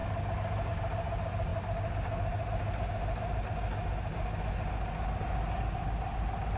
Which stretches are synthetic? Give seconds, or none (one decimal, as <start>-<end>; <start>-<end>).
none